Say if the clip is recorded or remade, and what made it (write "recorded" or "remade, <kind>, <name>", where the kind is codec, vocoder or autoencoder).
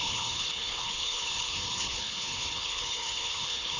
remade, codec, HILCodec